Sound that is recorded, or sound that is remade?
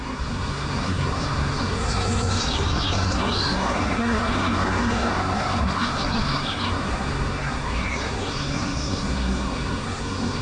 remade